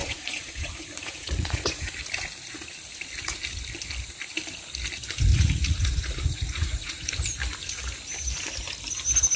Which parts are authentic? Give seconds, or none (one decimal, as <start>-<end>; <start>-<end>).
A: 1.9-5.3; 7.1-9.4